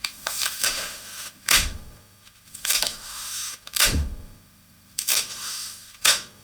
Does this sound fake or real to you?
fake